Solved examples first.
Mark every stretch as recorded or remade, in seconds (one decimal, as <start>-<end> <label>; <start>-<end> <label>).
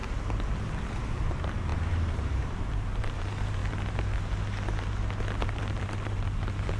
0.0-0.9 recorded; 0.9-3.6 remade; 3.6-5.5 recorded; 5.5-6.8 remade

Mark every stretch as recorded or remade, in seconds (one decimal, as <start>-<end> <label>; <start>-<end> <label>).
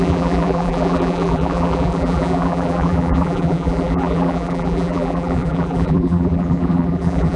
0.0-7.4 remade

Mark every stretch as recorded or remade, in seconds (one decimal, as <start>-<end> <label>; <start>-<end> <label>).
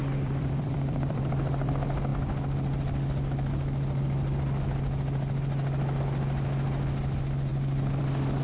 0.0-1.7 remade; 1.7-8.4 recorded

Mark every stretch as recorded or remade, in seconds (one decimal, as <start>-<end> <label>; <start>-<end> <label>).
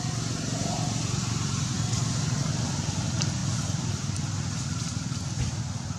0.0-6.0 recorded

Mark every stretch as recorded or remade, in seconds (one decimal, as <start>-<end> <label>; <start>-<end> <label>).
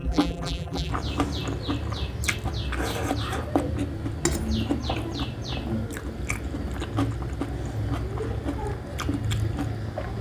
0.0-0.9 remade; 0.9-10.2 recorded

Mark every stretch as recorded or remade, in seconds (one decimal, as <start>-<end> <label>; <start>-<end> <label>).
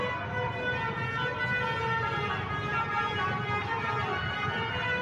0.0-2.7 recorded; 2.7-4.6 remade; 4.6-5.0 recorded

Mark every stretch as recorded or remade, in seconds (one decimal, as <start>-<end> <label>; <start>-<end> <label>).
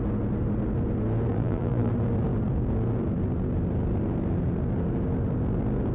0.0-1.3 recorded; 1.3-1.9 remade; 1.9-5.9 recorded